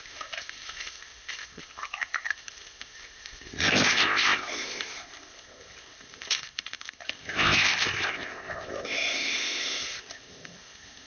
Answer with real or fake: fake